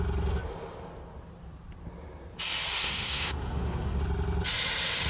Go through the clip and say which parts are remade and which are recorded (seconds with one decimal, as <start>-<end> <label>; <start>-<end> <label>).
0.0-2.7 recorded; 2.7-4.0 remade; 4.0-5.1 recorded